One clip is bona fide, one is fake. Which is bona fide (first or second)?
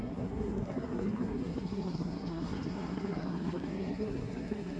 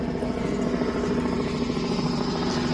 second